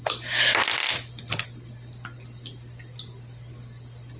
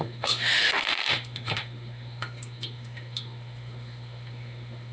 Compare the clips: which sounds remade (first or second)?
second